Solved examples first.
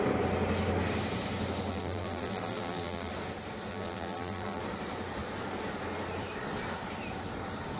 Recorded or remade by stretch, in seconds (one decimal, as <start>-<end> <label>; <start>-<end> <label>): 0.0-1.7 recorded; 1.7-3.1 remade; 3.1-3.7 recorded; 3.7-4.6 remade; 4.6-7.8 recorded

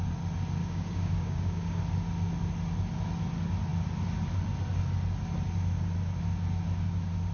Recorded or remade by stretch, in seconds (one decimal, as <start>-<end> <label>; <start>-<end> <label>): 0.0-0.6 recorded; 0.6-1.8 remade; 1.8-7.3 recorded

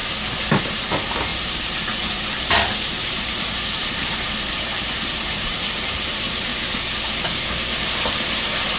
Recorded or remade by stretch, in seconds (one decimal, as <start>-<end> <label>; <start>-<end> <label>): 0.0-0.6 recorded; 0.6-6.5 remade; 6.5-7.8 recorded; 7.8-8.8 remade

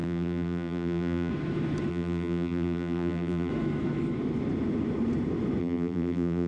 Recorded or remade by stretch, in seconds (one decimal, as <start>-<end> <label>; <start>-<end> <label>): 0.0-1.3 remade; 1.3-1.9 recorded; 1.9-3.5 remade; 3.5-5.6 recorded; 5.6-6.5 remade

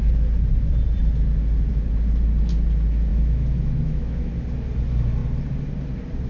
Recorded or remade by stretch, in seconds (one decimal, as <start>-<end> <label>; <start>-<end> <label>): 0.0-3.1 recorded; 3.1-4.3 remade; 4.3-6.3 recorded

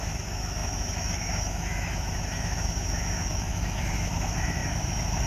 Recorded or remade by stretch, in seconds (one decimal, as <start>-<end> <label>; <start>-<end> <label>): 0.0-5.3 remade

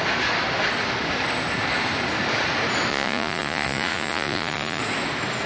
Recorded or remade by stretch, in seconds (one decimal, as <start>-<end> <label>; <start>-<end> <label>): 0.0-2.9 recorded; 2.9-4.8 remade; 4.8-5.5 recorded